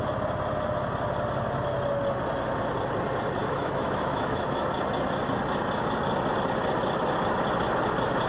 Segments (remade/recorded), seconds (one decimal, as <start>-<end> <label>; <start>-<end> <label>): 0.0-3.4 recorded; 3.4-4.7 remade; 4.7-8.3 recorded